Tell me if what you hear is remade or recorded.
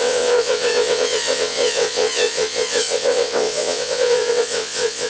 remade